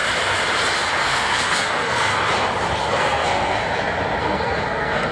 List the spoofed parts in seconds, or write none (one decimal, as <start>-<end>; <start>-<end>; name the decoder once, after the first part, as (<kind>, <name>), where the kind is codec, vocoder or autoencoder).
1.0-2.1 (codec, SNAC); 2.8-3.6; 4.2-5.1